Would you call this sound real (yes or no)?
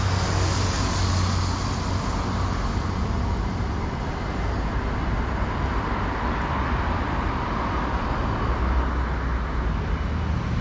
yes